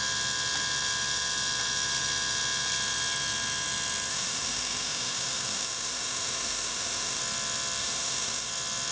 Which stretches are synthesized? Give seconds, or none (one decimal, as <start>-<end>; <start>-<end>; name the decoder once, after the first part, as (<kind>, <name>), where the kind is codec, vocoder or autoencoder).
4.1-7.2 (autoencoder, DAC-VAE); 7.8-8.5